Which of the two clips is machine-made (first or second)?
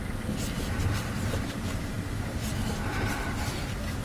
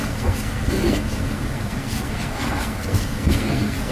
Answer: second